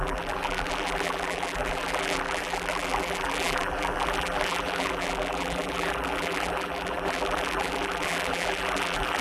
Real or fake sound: fake